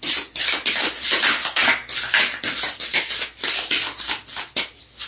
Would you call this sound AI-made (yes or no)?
no